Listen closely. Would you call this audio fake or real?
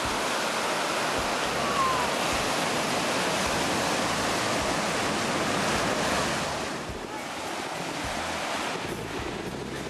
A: real